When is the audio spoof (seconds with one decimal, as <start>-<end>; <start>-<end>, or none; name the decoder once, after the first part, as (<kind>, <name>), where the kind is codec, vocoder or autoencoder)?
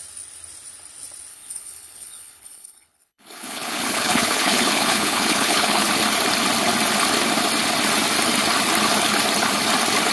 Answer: 1.3-5.9 (codec, HILCodec)